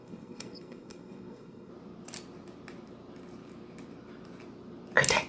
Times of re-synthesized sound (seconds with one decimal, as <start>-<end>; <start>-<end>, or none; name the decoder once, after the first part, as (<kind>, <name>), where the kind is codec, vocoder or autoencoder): 0.0-1.7 (codec, SNAC)